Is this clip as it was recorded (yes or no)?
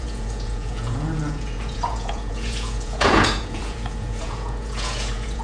no